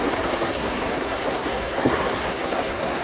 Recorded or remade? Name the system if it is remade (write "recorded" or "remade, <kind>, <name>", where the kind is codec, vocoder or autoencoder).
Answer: remade, codec, SNAC